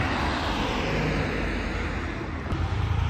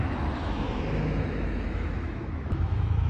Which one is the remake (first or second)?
second